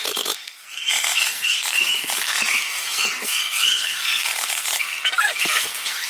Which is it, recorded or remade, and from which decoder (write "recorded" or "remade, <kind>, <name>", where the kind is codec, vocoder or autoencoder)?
remade, codec, SNAC